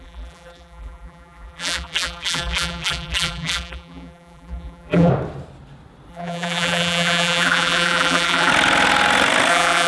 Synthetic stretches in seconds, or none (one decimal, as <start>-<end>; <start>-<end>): 0.0-5.1; 6.1-8.5; 9.5-9.9